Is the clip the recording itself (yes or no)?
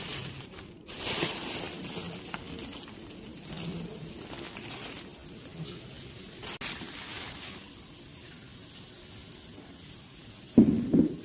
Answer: yes